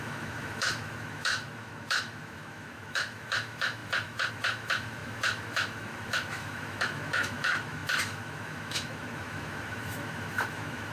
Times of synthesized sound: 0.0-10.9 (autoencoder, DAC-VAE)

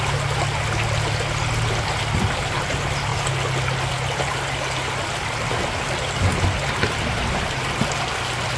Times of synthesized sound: none

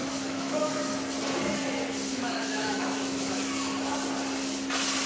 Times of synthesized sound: 0.0-0.8 (autoencoder, DAC-VAE); 2.1-3.4

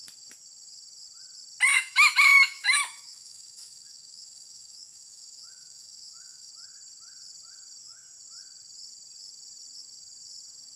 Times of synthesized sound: 1.7-6.5 (autoencoder, DAC-VAE)

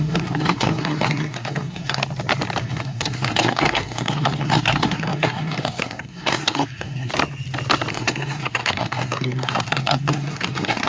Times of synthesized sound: 0.0-2.0 (codec, SNAC); 2.6-7.1; 7.9-10.9